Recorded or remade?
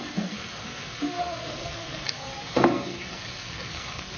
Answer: remade